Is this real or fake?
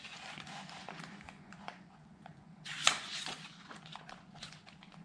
fake